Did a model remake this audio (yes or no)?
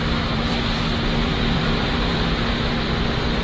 yes